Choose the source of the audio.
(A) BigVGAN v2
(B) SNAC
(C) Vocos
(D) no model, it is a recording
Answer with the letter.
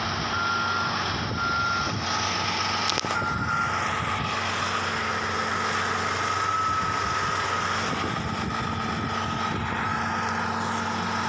D